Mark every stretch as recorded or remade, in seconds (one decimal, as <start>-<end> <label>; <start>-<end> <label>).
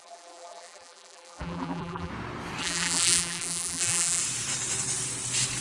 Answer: 0.0-2.1 remade; 2.1-2.6 recorded; 2.6-4.2 remade; 4.2-5.6 recorded